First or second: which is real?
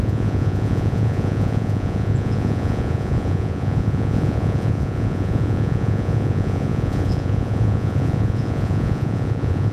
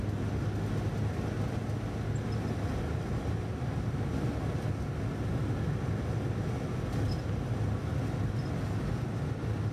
second